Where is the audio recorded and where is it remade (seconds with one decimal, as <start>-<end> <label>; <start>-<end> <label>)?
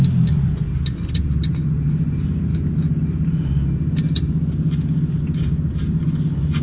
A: 0.0-6.6 recorded